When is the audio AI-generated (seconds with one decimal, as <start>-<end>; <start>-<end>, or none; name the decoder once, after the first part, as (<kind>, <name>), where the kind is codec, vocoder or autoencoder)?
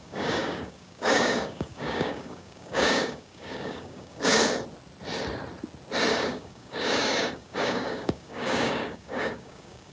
0.0-4.4 (codec, DAC); 6.1-9.9